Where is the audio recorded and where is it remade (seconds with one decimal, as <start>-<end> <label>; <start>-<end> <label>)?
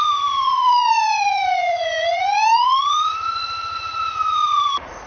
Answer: 0.0-5.1 remade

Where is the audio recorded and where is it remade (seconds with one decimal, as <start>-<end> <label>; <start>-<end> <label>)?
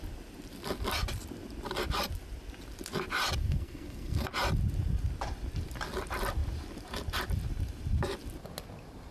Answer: 0.0-3.4 recorded; 3.4-4.3 remade; 4.3-9.1 recorded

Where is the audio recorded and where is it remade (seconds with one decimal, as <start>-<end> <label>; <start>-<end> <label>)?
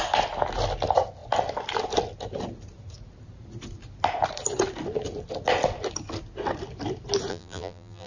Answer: 0.0-7.3 recorded; 7.3-8.1 remade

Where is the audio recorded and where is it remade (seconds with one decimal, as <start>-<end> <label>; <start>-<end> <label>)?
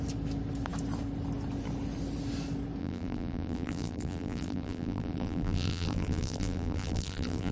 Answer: 0.0-2.8 recorded; 2.8-7.5 remade